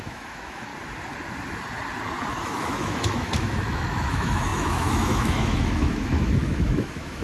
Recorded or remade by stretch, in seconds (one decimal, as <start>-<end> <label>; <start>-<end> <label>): 0.0-0.7 remade; 0.7-2.4 recorded; 2.4-7.2 remade